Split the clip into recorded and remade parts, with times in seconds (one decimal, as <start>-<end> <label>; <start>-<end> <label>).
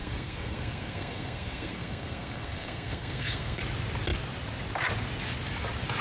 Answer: 0.0-3.6 remade; 3.6-6.0 recorded